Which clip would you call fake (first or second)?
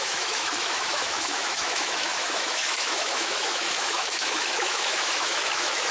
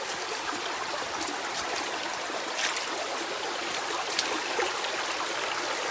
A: first